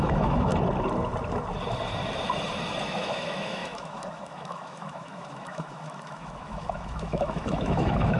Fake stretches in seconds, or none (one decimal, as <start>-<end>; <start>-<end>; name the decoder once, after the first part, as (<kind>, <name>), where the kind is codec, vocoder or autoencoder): 0.0-0.5 (autoencoder, DAC-VAE); 2.8-8.2